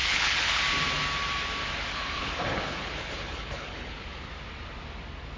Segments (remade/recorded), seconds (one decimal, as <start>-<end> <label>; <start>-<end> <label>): 0.0-0.6 remade; 0.6-1.9 recorded; 1.9-4.3 remade; 4.3-5.4 recorded